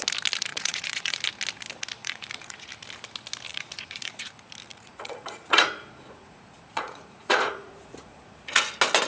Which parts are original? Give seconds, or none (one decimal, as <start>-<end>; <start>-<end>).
0.0-0.5; 1.2-2.0; 2.7-3.5; 4.3-4.7; 8.6-9.1